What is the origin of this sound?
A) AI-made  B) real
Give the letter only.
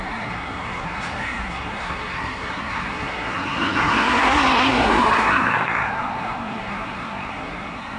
A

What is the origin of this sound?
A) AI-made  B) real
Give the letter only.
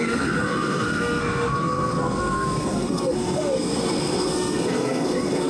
A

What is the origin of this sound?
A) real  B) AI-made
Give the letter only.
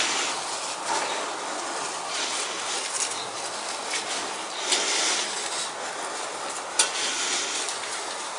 A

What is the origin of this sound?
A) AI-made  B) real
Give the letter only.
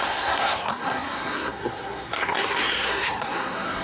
A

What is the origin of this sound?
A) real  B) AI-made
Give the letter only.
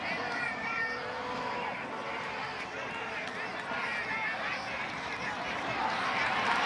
A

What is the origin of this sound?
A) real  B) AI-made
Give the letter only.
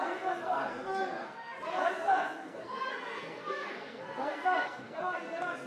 B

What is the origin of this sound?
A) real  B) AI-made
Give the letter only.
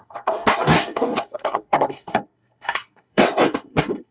B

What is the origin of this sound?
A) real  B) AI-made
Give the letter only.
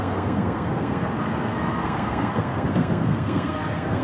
B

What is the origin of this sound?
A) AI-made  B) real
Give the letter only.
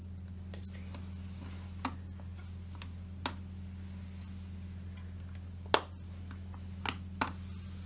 B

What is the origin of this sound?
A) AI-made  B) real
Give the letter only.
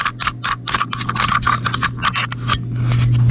B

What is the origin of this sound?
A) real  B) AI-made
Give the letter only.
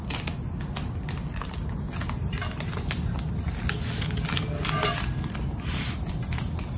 A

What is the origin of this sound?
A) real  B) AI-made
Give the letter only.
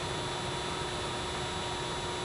A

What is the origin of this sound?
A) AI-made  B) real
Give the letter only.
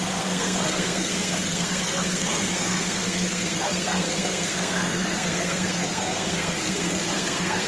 A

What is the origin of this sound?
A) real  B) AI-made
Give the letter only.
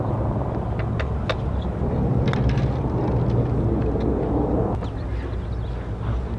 A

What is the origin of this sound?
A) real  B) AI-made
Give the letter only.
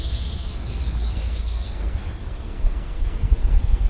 B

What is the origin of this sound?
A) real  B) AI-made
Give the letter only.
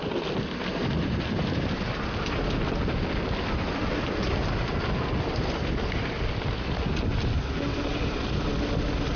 A